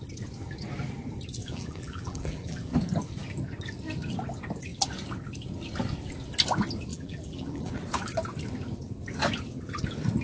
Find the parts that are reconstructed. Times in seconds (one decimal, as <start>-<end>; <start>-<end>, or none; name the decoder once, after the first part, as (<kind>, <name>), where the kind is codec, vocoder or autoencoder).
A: 1.4-2.8 (vocoder, BigVGAN v2); 6.9-7.7